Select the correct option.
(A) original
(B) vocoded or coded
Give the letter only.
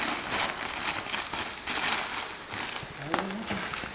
A